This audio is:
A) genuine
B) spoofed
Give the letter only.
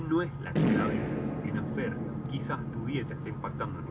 A